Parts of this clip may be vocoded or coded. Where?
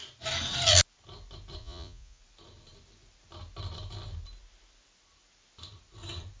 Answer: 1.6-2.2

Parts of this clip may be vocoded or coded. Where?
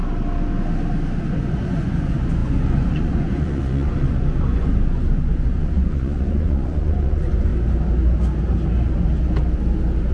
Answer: 1.2-7.5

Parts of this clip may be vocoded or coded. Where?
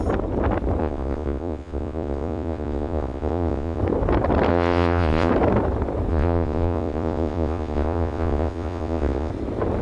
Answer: 0.8-3.8; 4.5-5.3; 6.1-9.3